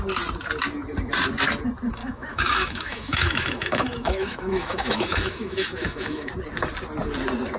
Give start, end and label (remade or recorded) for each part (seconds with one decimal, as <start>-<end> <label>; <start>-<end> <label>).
0.0-2.0 recorded; 2.0-6.3 remade; 6.3-7.6 recorded